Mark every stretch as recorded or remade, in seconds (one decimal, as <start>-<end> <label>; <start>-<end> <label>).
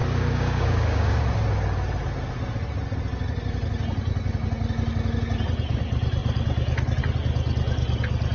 0.0-1.2 remade; 1.2-8.3 recorded